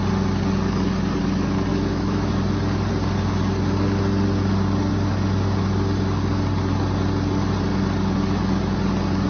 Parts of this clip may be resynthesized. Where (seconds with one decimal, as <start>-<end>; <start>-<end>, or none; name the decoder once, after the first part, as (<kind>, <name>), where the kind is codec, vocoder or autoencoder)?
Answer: 1.7-2.3 (autoencoder, DAC-VAE)